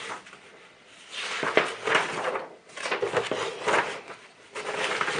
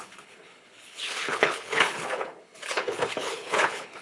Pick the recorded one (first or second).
first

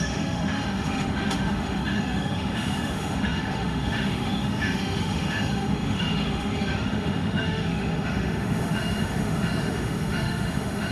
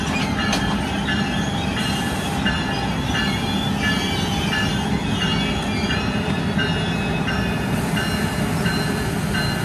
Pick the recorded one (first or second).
second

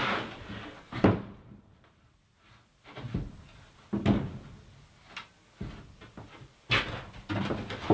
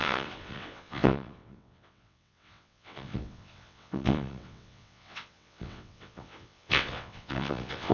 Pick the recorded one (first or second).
first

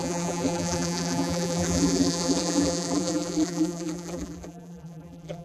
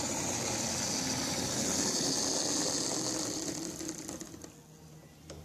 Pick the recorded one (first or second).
second